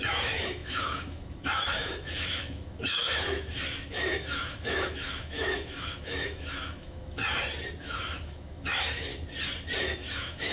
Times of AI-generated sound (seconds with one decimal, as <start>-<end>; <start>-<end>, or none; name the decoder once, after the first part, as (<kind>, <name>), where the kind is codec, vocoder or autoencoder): 0.0-7.2 (autoencoder, DAC-VAE); 7.8-9.1; 9.8-10.5